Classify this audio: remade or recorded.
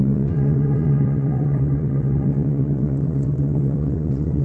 remade